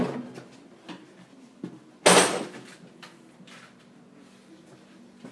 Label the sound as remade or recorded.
recorded